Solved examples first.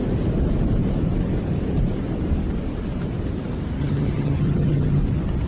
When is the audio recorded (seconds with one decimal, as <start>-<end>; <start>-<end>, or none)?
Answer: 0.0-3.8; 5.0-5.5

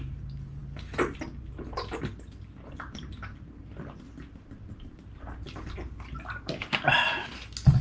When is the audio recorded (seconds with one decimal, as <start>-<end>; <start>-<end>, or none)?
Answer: 0.0-7.8

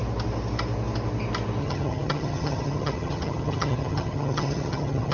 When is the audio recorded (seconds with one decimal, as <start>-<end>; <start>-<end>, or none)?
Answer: 0.0-1.6

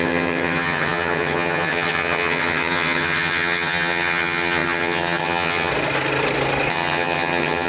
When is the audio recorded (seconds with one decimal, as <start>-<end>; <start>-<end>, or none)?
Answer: 5.7-6.7